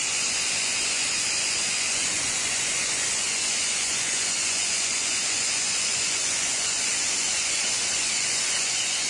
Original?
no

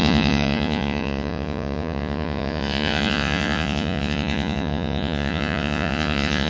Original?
no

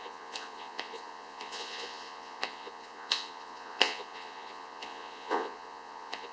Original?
no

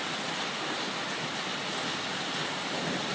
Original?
yes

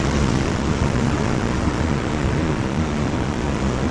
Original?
no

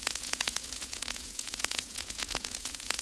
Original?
no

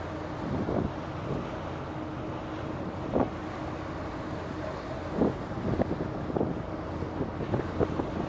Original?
yes